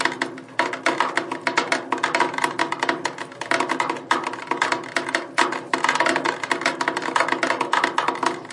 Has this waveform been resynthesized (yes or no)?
no